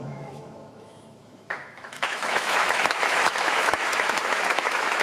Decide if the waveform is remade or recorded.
remade